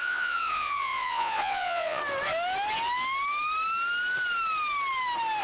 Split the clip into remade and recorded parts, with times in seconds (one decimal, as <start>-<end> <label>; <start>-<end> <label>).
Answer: 0.0-2.0 remade; 2.0-5.4 recorded